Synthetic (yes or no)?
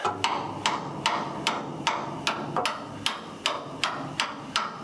no